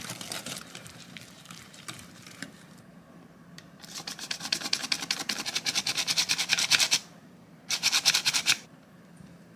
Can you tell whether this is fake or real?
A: fake